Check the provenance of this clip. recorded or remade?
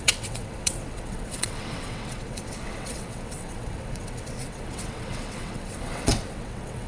remade